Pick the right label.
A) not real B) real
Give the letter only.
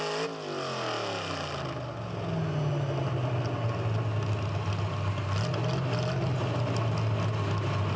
B